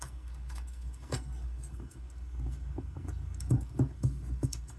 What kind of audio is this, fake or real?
fake